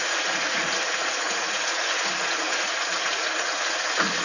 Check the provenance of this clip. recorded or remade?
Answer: remade